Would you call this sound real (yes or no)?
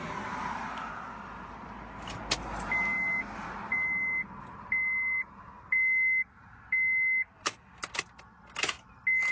yes